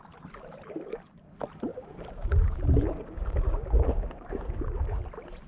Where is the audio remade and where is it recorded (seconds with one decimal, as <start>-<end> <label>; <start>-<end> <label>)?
0.0-1.7 recorded; 1.7-5.0 remade; 5.0-5.5 recorded